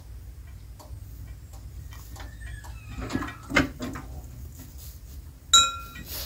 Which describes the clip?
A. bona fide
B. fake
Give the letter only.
A